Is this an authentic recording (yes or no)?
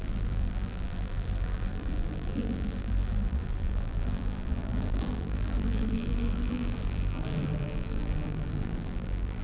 no